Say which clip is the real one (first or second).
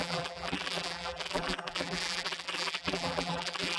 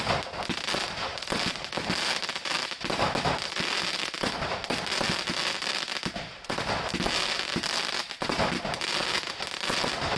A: second